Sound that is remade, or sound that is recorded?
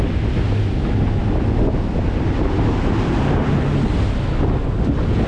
recorded